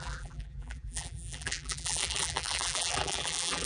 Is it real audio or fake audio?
fake